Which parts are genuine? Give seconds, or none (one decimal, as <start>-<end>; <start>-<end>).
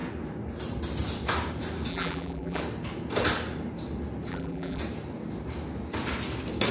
0.0-1.9; 2.6-4.3; 4.8-6.7